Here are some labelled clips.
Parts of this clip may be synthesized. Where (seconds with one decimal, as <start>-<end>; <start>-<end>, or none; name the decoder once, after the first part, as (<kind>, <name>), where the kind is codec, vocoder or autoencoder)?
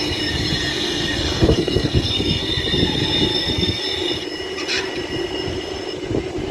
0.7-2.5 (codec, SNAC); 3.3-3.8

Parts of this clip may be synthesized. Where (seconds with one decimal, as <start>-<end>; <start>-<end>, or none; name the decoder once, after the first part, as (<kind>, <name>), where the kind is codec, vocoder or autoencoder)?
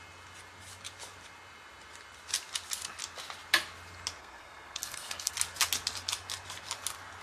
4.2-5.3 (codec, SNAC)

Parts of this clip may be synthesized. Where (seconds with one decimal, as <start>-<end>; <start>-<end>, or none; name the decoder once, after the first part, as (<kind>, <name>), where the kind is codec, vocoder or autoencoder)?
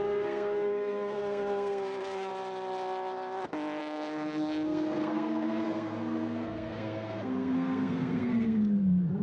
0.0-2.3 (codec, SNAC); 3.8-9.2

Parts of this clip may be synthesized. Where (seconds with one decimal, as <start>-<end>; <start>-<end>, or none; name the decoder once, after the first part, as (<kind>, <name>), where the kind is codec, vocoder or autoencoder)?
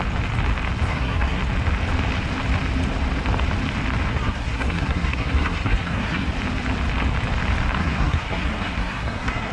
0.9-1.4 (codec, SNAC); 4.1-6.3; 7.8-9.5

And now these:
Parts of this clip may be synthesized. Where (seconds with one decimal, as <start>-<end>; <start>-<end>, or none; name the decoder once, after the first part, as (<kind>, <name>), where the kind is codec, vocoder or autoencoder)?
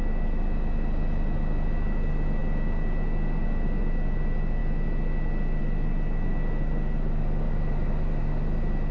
none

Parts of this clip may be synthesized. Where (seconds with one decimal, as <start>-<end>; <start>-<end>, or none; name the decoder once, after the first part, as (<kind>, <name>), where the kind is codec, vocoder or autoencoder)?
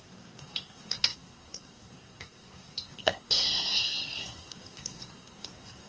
0.0-5.9 (codec, SNAC)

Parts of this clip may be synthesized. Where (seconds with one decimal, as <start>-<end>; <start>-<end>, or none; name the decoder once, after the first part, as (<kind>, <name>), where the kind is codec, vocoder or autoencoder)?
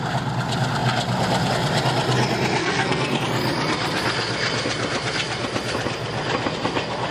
2.6-3.2 (codec, SNAC)